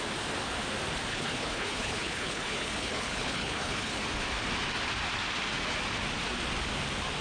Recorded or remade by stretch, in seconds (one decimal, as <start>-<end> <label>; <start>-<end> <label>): 0.0-1.1 recorded; 1.1-4.0 remade; 4.0-7.2 recorded